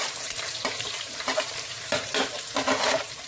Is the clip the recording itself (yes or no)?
no